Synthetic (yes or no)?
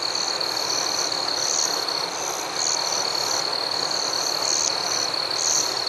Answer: no